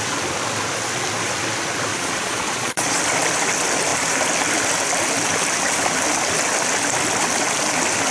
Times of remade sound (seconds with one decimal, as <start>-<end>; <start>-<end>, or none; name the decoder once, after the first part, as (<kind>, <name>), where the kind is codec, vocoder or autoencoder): 1.9-3.0 (vocoder, Vocos)